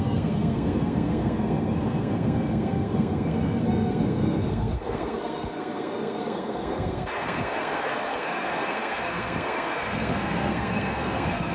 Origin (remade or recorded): remade